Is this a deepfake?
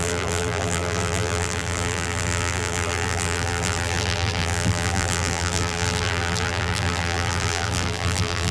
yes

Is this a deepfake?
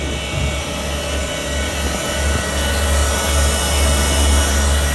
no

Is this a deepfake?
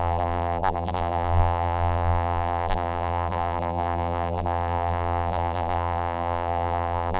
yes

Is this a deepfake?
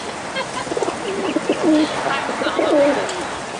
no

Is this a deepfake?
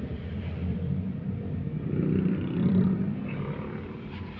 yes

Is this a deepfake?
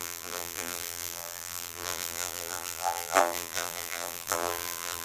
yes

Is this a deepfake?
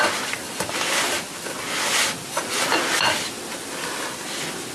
no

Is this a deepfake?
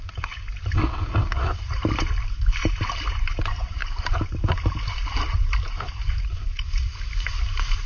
yes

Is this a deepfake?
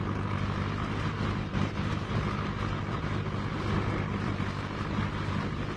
no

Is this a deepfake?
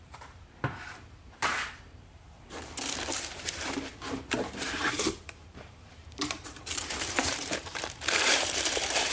yes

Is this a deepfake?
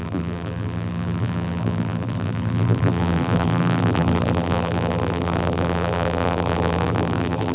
yes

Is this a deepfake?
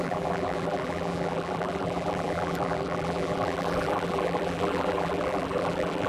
yes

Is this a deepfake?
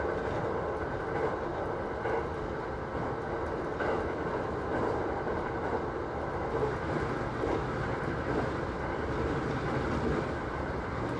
no